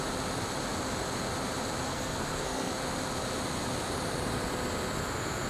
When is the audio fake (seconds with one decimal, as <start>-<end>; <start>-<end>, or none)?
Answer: 1.9-2.7